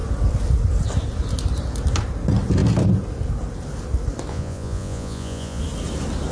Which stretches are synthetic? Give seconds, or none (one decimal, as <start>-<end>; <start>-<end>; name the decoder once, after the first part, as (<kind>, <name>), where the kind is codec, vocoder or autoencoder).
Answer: 4.3-5.6 (vocoder, Vocos)